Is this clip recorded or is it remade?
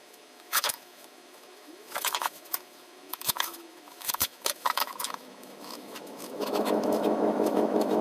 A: remade